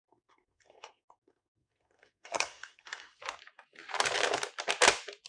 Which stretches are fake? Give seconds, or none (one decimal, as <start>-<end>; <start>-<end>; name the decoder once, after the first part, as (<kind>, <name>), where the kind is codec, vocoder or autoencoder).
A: 0.0-3.2 (codec, SNAC)